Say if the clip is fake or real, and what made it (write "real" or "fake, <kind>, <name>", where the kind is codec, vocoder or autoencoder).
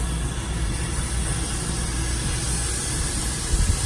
real